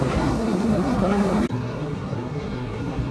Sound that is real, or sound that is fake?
fake